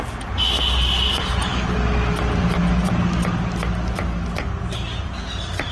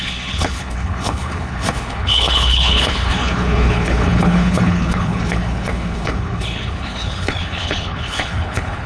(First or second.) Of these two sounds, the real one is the first